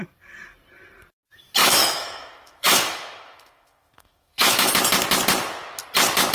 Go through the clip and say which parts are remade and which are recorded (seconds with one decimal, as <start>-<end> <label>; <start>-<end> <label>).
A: 0.0-1.6 recorded; 1.6-4.7 remade; 4.7-6.3 recorded